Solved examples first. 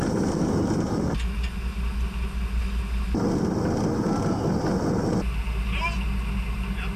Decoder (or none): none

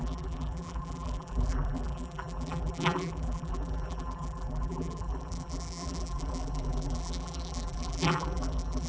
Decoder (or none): vocoder, BigVGAN v2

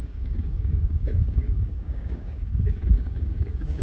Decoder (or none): codec, DAC